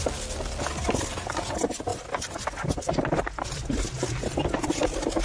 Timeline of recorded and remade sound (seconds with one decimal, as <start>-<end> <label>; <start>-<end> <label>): 0.0-1.9 recorded; 1.9-5.2 remade